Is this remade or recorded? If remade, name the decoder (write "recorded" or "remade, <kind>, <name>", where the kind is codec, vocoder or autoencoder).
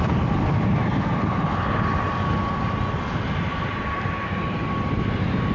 recorded